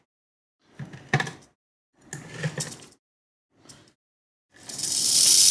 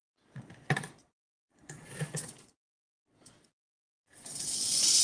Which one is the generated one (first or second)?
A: second